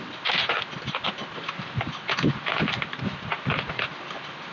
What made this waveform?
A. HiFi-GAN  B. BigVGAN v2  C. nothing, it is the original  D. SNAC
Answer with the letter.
C